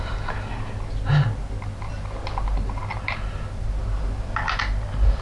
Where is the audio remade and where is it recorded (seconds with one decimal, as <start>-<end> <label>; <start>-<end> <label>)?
0.0-5.2 recorded